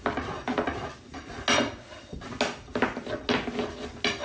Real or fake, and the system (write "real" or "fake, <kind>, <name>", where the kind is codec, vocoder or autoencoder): real